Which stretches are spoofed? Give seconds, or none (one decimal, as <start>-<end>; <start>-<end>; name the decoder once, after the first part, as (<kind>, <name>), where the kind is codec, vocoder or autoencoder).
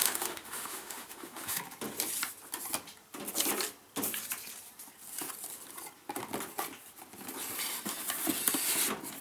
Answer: 0.0-1.6 (autoencoder, DAC-VAE)